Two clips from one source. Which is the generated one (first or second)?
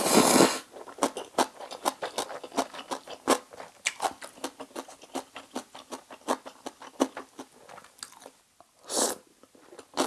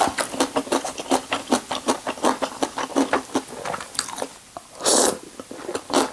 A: second